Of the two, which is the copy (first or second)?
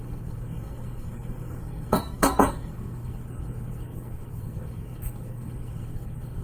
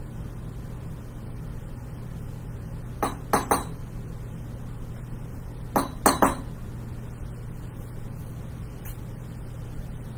first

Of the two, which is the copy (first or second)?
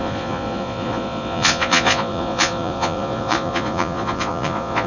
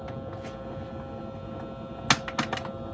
first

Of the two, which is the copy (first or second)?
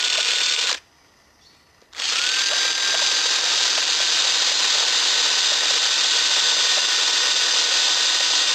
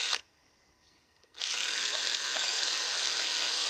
second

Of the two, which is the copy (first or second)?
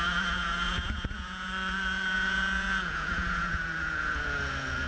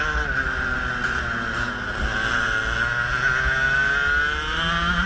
first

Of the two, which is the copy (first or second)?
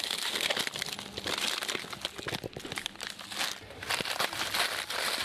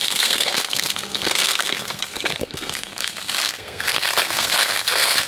second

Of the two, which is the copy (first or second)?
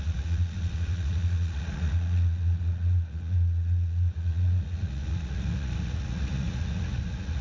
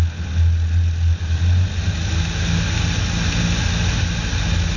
first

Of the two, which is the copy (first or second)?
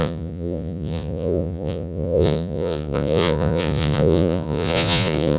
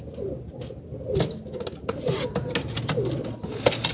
first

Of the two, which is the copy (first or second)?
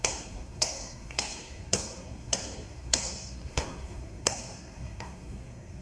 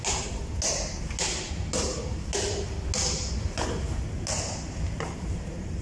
first